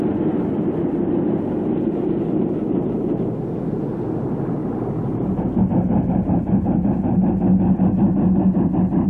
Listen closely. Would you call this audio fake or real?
real